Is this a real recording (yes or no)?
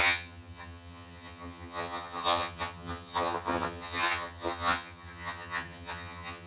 no